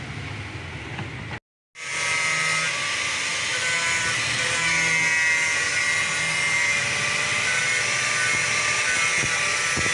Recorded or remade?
recorded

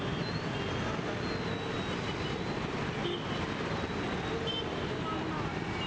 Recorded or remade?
recorded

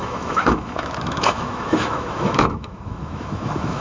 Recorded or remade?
remade